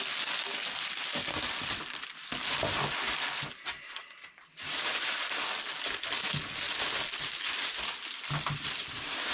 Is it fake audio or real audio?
real